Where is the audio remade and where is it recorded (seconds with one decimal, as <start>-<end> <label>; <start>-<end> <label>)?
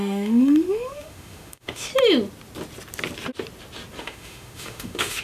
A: 0.0-1.9 remade; 1.9-4.0 recorded; 4.0-5.2 remade